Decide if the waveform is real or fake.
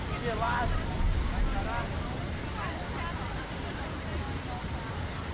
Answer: real